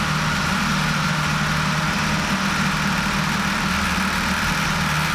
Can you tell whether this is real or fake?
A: real